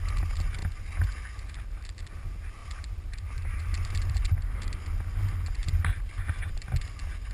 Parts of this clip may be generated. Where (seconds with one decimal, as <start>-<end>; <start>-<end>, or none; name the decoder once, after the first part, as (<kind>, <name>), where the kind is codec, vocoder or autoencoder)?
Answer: 2.6-4.2 (vocoder, BigVGAN v2); 5.6-6.8